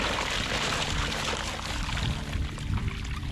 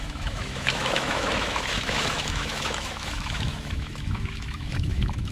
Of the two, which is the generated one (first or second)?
second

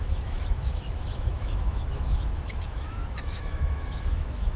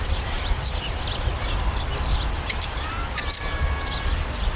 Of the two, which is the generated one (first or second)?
first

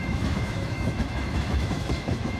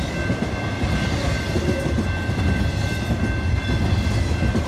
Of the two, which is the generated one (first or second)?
first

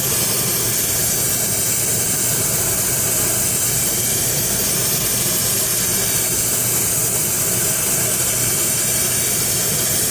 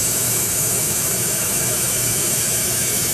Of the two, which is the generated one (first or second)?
second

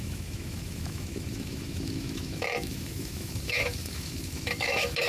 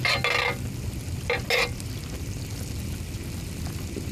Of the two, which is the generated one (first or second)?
first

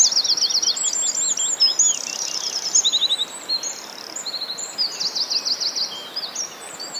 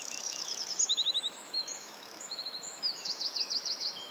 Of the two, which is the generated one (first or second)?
second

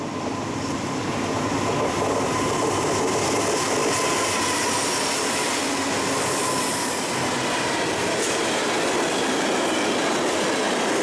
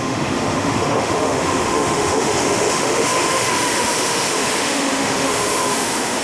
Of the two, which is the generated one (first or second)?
second